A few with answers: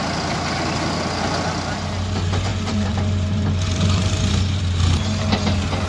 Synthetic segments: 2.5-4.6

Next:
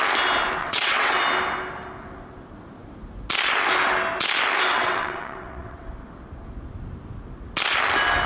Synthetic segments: 0.6-1.2; 4.7-5.9